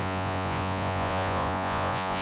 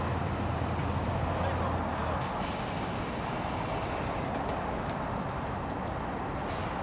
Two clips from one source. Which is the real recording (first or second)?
second